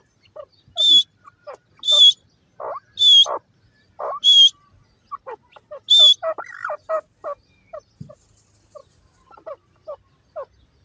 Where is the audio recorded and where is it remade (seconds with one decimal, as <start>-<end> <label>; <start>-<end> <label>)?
0.0-10.8 recorded